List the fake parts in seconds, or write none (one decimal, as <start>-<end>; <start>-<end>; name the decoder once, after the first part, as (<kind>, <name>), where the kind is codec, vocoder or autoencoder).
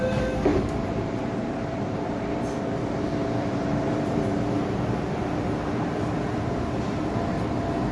0.5-2.2 (vocoder, BigVGAN v2); 3.5-4.2